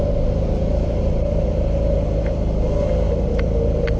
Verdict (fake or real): real